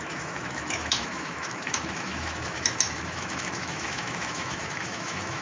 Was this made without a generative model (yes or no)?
no